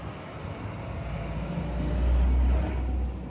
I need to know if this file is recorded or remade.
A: recorded